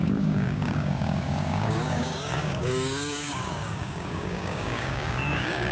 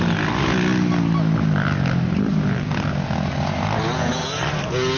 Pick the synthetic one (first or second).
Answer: first